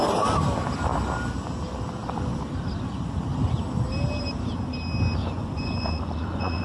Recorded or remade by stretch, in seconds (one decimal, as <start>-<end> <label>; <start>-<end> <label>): 0.0-5.2 recorded; 5.2-6.6 remade